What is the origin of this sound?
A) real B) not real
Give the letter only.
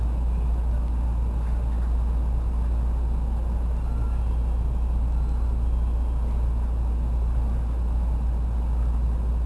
A